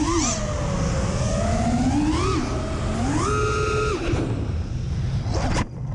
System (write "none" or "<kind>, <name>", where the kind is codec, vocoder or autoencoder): none